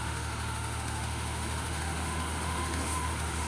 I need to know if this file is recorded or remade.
remade